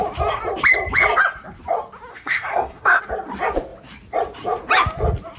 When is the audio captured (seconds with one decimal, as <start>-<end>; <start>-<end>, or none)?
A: 0.0-2.1; 3.0-5.4